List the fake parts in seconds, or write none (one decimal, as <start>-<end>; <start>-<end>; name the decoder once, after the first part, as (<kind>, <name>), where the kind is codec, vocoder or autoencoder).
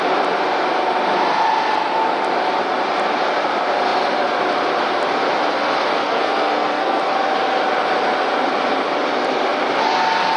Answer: 5.9-7.0 (codec, SNAC)